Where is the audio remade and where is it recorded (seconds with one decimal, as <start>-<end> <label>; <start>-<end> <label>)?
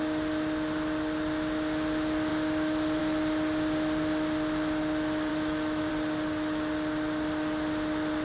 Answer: 0.0-5.3 recorded; 5.3-5.9 remade; 5.9-8.2 recorded